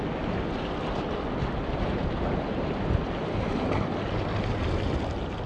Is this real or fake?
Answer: real